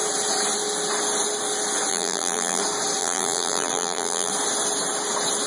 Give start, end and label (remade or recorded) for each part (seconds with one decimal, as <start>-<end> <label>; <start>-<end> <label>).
0.0-1.9 recorded; 1.9-2.6 remade; 2.6-3.0 recorded; 3.0-4.3 remade; 4.3-5.5 recorded